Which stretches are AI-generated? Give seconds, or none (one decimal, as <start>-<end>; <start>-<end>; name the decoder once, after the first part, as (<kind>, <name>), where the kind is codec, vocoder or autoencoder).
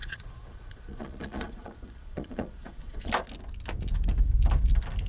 0.0-3.1 (vocoder, Vocos)